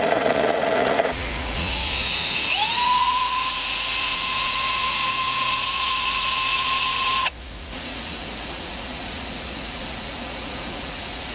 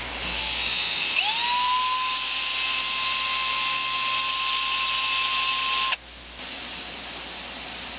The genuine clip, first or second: second